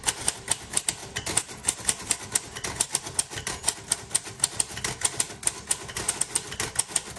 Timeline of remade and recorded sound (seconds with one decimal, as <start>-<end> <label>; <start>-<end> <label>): 0.0-7.2 recorded